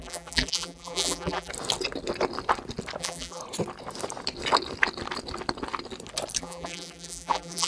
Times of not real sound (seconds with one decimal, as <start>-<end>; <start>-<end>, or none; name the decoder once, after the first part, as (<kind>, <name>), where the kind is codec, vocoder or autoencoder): 0.0-1.5 (vocoder, BigVGAN v2); 3.0-3.4; 6.4-7.7

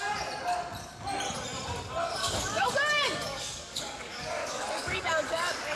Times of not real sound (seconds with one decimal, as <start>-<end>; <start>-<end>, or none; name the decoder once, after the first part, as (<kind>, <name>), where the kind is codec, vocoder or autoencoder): 2.2-5.8 (codec, DAC)

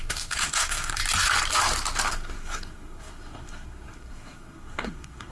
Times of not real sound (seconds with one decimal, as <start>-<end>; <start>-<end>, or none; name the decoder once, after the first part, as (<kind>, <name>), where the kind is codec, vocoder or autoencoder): 0.0-1.0 (codec, SNAC); 2.1-5.3

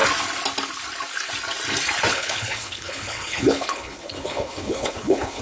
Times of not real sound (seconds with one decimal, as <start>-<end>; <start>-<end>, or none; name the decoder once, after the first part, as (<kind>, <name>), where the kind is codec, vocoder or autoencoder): 2.1-5.4 (codec, HILCodec)